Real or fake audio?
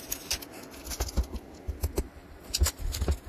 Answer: real